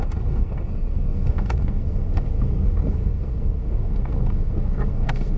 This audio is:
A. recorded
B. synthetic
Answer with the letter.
B